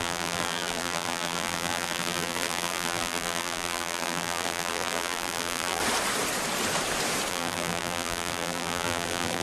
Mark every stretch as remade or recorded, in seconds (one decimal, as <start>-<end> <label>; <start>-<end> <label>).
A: 0.0-5.8 remade; 5.8-7.3 recorded; 7.3-9.4 remade